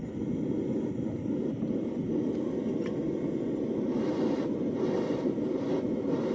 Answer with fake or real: real